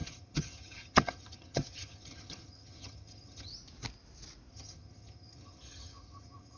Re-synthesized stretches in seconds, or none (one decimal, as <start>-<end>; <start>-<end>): 0.0-3.5; 4.5-6.6